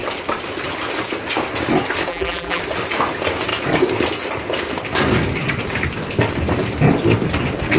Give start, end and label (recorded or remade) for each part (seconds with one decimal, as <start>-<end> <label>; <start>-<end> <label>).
0.0-2.1 recorded; 2.1-2.6 remade; 2.6-7.8 recorded